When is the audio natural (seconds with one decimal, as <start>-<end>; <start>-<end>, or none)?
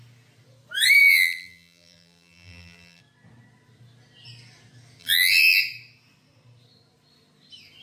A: 0.0-1.0; 3.0-5.0; 5.6-7.8